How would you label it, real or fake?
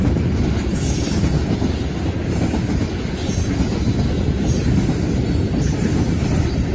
real